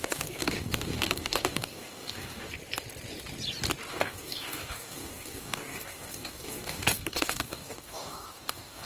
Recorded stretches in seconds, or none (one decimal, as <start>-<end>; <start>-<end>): 2.5-3.9